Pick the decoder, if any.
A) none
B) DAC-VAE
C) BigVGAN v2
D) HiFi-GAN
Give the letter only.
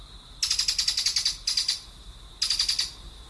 A